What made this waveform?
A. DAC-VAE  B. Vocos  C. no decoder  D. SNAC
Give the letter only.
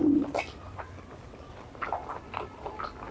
C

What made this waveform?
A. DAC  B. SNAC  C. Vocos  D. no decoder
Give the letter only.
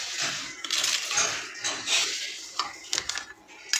D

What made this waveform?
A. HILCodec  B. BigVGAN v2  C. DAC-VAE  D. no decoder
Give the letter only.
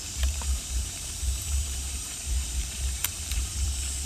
B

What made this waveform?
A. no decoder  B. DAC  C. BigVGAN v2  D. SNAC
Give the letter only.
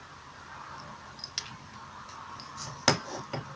A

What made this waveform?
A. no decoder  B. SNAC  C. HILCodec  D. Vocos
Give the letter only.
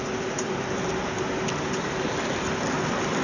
A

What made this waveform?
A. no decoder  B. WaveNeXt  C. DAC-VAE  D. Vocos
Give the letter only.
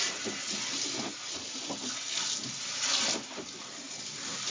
A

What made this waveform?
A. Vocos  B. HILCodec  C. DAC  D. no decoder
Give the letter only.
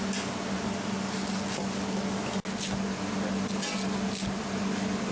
D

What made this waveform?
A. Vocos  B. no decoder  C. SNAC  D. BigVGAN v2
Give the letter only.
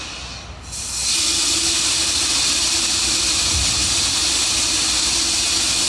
B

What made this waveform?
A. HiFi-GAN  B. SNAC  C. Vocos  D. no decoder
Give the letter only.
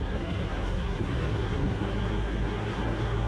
B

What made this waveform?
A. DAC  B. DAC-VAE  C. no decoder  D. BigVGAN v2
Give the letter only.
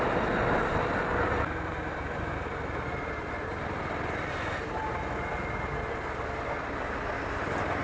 C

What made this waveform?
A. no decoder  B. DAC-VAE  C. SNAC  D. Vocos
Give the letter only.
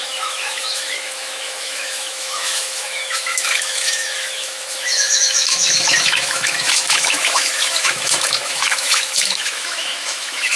B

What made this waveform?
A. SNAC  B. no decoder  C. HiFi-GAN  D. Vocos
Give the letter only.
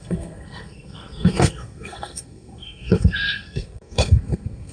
A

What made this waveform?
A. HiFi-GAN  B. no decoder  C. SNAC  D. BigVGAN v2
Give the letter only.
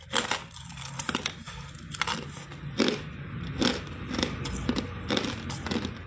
B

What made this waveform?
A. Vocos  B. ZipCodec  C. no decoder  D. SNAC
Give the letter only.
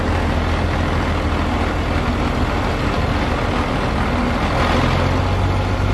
C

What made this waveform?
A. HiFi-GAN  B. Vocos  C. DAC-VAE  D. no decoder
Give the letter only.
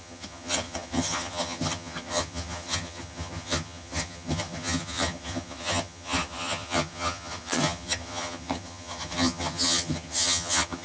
A